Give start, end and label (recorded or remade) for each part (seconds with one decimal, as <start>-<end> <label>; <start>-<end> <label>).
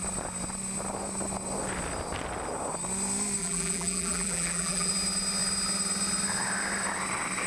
0.0-3.4 recorded; 3.4-4.9 remade; 4.9-7.5 recorded